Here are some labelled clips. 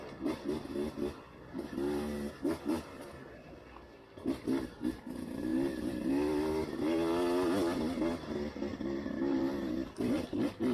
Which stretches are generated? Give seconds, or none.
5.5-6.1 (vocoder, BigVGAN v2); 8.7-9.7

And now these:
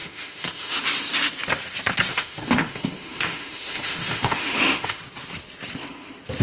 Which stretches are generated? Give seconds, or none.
0.0-0.8 (autoencoder, DAC-VAE); 2.1-5.0

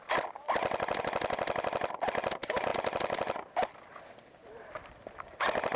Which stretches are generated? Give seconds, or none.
none

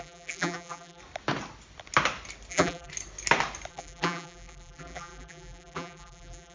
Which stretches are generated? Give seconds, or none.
0.0-1.0 (vocoder, BigVGAN v2); 2.5-2.9; 3.7-6.5

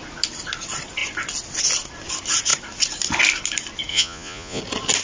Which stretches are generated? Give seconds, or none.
3.9-4.6 (vocoder, Vocos)